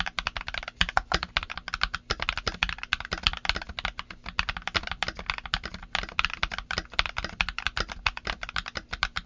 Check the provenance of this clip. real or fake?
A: real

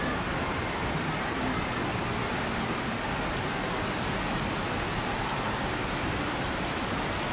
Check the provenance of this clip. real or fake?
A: real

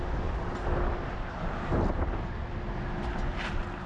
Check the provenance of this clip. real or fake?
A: real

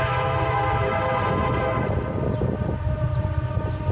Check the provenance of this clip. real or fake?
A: real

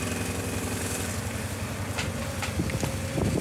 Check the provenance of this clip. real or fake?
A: real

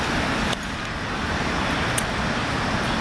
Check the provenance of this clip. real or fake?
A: real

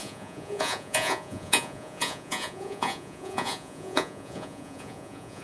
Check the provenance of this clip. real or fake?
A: fake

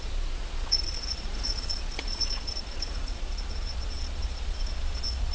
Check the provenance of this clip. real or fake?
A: fake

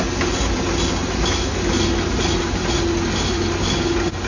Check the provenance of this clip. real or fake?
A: real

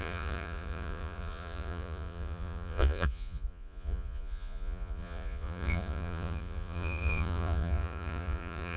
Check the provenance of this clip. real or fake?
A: fake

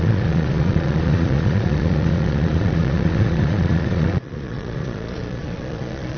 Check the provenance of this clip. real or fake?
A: fake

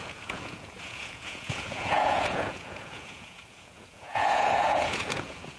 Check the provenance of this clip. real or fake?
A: fake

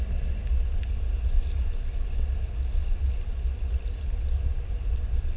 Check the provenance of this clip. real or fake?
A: real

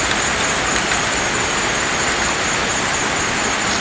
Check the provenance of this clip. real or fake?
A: real